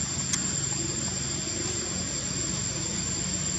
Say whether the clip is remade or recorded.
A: recorded